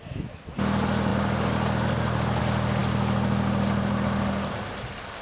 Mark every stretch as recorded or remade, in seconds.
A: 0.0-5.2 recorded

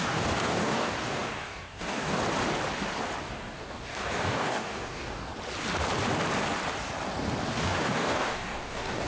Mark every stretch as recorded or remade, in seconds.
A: 0.0-2.2 remade; 2.2-3.2 recorded; 3.2-5.3 remade; 5.3-7.6 recorded; 7.6-9.1 remade